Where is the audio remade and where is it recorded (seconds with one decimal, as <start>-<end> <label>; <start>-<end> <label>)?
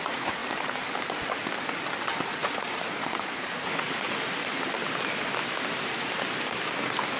0.0-0.4 remade; 0.4-2.3 recorded; 2.3-4.5 remade; 4.5-7.2 recorded